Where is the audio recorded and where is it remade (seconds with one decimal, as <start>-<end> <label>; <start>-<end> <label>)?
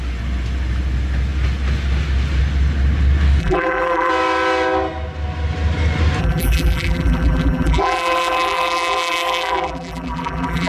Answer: 0.0-3.4 recorded; 3.4-4.1 remade; 4.1-6.2 recorded; 6.2-10.7 remade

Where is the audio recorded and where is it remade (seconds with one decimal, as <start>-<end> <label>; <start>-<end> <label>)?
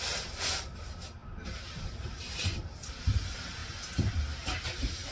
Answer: 0.0-5.1 recorded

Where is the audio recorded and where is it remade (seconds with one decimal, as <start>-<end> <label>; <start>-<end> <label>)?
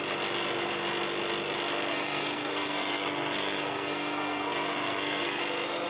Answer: 0.0-1.9 recorded; 1.9-5.4 remade; 5.4-5.9 recorded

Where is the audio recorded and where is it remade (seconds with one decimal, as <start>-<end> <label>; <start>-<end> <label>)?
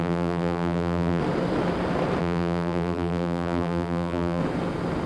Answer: 0.0-1.2 remade; 1.2-2.2 recorded; 2.2-4.4 remade; 4.4-5.1 recorded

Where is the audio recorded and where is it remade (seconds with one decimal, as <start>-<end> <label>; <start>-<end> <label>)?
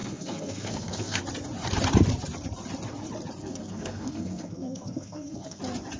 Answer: 0.0-1.2 remade; 1.2-3.4 recorded; 3.4-5.6 remade; 5.6-6.0 recorded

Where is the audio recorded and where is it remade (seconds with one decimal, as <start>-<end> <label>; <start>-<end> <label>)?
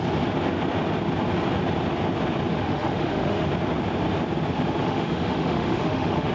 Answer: 0.0-2.5 recorded; 2.5-3.5 remade; 3.5-4.8 recorded; 4.8-6.3 remade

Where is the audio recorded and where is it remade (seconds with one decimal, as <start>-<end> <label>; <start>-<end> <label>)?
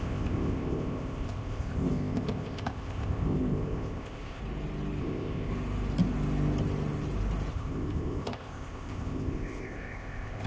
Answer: 0.0-4.4 remade; 4.4-5.0 recorded; 5.0-5.5 remade; 5.5-7.5 recorded; 7.5-10.5 remade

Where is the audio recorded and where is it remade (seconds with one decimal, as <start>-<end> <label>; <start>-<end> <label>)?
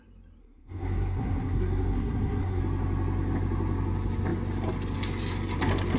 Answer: 0.0-0.4 recorded; 0.4-2.6 remade; 2.6-6.0 recorded